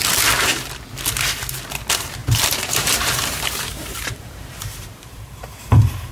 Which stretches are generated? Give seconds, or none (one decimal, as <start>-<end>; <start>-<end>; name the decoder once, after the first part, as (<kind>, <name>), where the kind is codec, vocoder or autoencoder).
2.2-6.1 (vocoder, BigVGAN v2)